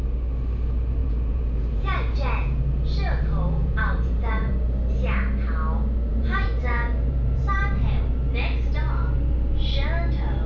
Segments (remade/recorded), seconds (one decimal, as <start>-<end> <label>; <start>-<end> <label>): 0.0-1.0 recorded; 1.0-2.6 remade; 2.6-3.6 recorded; 3.6-4.5 remade; 4.5-6.1 recorded; 6.1-7.4 remade; 7.4-10.5 recorded